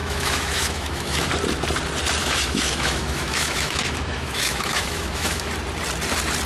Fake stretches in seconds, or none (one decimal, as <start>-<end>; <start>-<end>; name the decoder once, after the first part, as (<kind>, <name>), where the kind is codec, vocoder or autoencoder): 0.0-1.3 (autoencoder, DAC-VAE); 2.2-5.5